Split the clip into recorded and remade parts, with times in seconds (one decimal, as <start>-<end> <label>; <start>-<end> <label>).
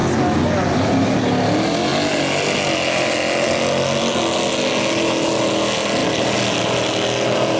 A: 0.0-7.6 recorded